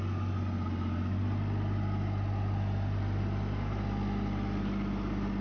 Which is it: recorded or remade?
recorded